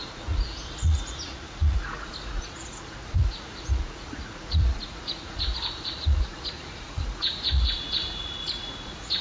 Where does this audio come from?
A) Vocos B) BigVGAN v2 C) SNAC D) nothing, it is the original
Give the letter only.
A